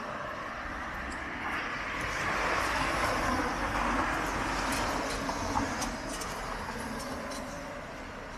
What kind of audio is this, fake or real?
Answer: real